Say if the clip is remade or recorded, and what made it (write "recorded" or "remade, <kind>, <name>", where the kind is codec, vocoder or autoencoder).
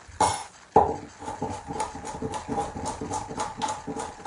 recorded